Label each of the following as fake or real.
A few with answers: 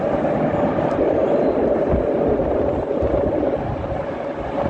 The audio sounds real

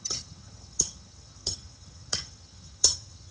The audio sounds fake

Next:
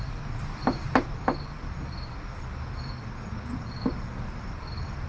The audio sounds real